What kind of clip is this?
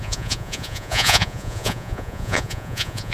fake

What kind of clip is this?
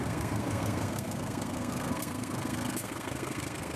fake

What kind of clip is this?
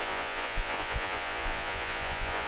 fake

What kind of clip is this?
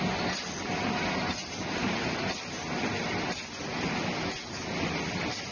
real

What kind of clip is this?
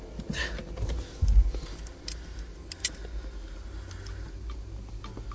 real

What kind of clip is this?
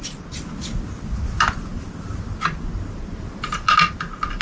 real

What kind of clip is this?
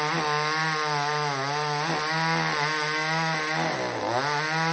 real